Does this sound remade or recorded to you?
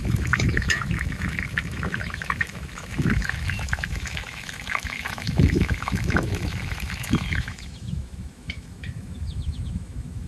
remade